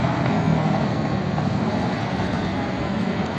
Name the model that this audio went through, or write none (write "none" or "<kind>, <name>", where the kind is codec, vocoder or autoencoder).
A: codec, SNAC